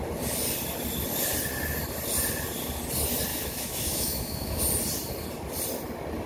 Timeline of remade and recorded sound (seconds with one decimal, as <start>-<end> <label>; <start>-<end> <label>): 0.0-3.3 recorded; 3.3-4.6 remade; 4.6-6.3 recorded